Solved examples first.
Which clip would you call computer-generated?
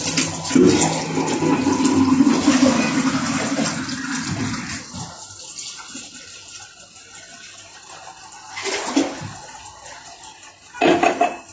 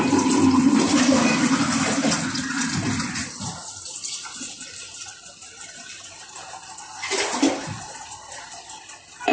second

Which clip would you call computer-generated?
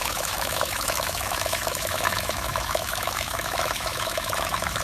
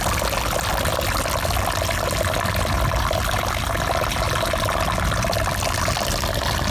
first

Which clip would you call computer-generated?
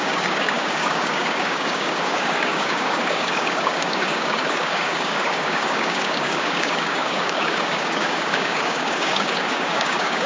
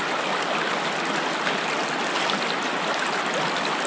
first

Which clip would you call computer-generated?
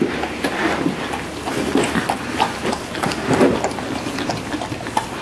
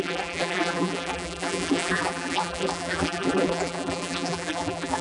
second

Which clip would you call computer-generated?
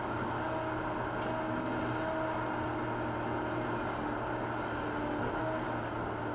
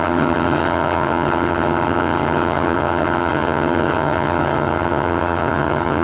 second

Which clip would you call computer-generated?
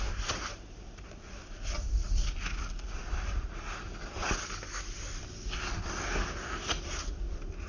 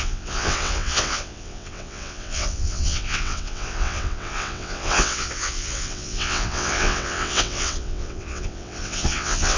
second